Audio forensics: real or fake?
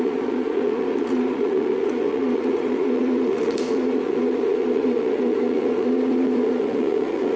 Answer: fake